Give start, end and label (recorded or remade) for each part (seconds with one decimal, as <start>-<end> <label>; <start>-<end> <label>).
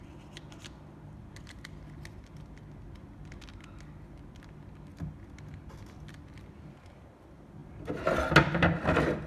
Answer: 0.0-9.3 recorded